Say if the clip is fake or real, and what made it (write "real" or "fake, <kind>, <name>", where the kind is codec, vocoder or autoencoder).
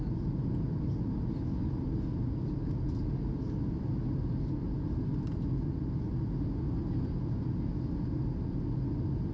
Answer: real